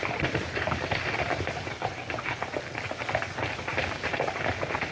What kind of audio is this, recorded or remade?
recorded